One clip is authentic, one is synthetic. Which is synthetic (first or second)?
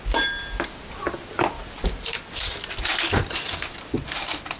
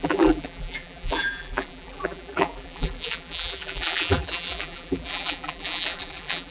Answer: second